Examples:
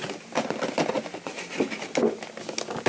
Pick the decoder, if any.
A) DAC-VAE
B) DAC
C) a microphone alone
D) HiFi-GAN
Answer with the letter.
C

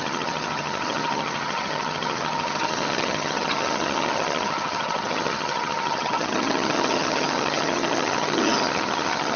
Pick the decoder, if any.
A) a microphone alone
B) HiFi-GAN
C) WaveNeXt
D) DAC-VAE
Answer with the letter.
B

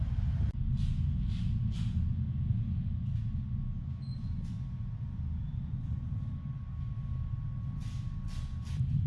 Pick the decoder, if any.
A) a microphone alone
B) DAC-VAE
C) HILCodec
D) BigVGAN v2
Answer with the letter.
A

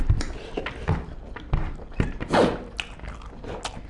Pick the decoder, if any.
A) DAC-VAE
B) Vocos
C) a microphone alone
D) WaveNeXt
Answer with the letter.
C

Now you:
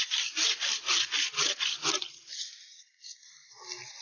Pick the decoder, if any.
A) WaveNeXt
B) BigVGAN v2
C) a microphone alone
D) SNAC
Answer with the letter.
B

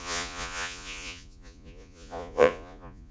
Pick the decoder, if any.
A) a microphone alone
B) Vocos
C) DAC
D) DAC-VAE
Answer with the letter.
B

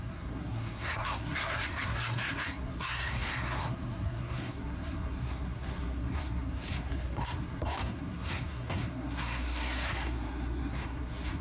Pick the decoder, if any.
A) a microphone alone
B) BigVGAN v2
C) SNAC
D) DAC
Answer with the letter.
C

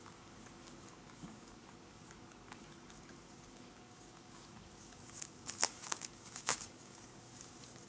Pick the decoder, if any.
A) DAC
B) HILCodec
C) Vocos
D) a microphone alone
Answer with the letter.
A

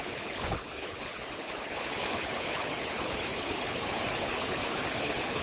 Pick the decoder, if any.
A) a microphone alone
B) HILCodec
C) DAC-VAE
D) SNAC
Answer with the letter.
B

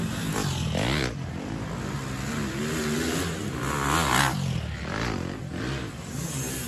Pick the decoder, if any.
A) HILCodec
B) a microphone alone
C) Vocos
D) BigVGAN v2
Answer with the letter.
B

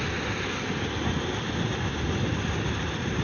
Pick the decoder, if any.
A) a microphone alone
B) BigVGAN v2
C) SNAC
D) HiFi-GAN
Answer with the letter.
A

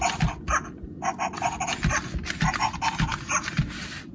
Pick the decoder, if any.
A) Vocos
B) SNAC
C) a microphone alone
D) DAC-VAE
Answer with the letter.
C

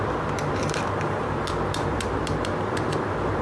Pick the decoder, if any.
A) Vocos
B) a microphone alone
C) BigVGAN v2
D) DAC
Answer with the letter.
C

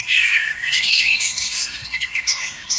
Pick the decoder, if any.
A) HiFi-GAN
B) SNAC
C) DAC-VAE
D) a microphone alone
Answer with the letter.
B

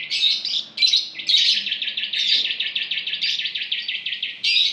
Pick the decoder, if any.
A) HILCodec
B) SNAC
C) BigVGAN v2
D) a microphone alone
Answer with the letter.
D